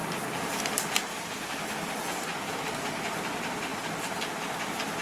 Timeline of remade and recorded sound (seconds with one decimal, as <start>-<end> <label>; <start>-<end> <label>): 0.0-5.0 remade